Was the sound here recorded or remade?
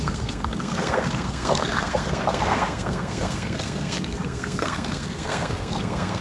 remade